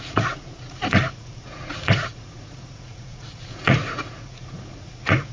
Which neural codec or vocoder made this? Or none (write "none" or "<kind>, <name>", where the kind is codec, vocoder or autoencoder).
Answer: vocoder, Vocos